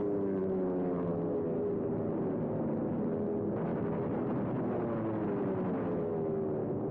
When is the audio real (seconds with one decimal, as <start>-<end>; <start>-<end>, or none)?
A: 0.0-0.4; 1.1-6.9